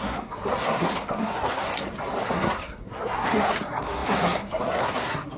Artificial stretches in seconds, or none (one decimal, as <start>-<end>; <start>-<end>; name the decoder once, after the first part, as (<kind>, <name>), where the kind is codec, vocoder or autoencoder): 0.0-1.7 (codec, SNAC); 2.2-5.4